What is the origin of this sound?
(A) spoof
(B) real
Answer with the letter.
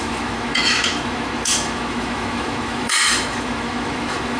A